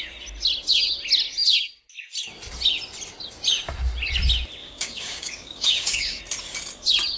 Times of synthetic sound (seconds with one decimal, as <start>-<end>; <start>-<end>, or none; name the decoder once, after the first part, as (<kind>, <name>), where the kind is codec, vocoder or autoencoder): 4.6-6.2 (codec, DAC)